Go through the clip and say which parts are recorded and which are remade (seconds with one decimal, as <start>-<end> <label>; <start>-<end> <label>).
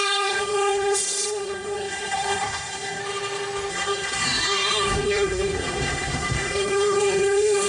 0.0-3.0 remade; 3.0-3.7 recorded; 3.7-7.7 remade